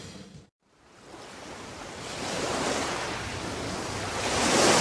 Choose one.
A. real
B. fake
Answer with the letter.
A